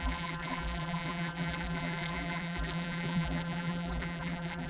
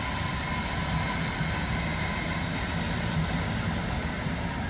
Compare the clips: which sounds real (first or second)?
second